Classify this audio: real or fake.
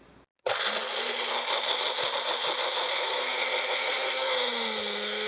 real